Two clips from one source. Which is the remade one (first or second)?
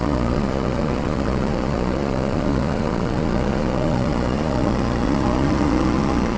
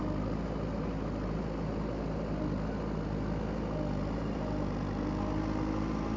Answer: first